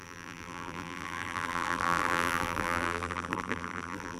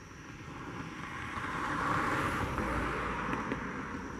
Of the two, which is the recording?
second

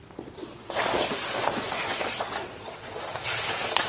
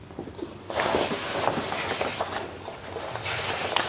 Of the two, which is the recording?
second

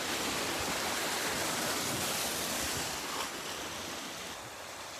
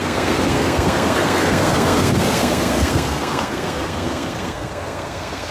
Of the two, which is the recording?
first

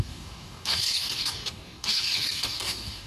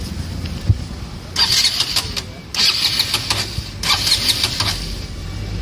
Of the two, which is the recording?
second